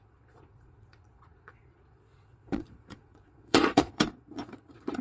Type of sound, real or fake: fake